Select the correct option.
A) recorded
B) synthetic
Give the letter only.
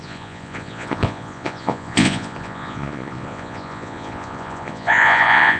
B